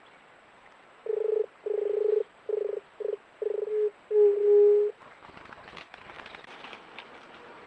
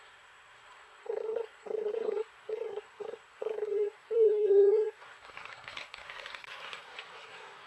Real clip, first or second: first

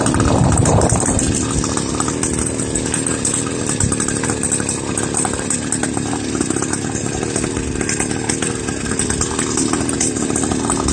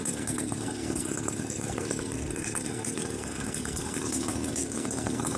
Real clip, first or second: first